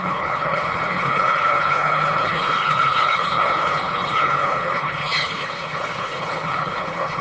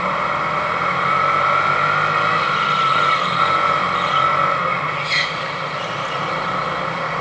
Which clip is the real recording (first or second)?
second